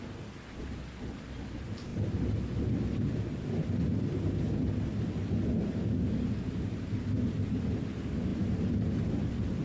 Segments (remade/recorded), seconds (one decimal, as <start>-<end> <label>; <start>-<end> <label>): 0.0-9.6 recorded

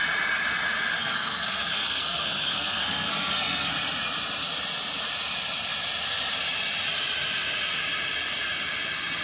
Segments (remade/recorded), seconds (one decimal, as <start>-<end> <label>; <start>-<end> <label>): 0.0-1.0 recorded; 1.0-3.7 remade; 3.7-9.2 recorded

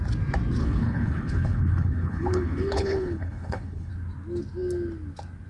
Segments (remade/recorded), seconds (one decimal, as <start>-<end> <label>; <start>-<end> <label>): 0.0-0.6 recorded; 0.6-3.9 remade; 3.9-5.5 recorded

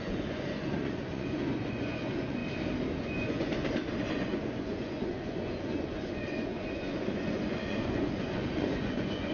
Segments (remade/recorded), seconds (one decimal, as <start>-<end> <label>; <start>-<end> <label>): 0.0-2.4 remade; 2.4-3.0 recorded; 3.0-3.6 remade; 3.6-4.1 recorded; 4.1-9.3 remade